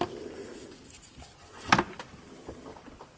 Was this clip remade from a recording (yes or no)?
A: no